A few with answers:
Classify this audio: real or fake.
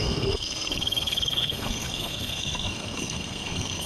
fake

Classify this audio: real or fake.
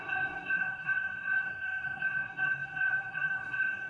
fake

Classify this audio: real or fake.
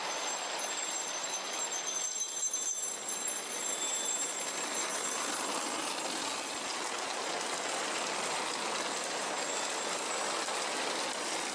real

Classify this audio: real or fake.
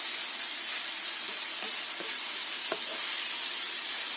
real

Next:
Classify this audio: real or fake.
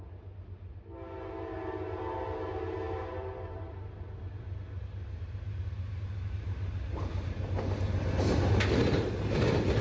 real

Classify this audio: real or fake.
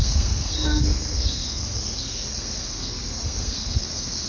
fake